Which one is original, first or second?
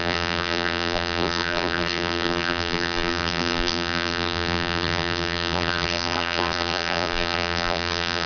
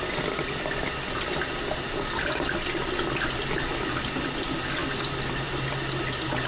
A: second